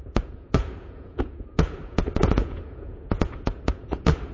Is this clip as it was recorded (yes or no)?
no